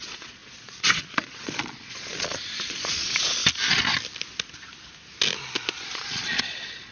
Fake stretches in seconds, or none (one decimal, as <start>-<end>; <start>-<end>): 0.0-3.4; 5.8-6.9